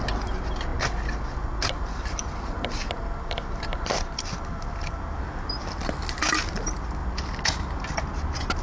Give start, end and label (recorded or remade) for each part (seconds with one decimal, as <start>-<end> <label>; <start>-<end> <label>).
0.0-8.6 recorded